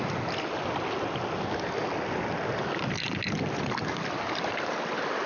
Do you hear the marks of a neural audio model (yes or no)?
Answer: no